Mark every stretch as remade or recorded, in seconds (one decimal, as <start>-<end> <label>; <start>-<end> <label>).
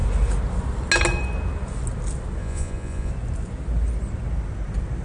0.0-2.4 recorded; 2.4-3.1 remade; 3.1-5.0 recorded